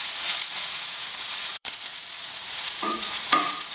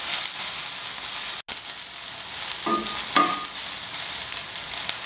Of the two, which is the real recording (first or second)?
second